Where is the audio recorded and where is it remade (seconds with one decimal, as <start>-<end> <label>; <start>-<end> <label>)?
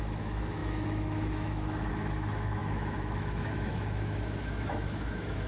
0.0-5.5 remade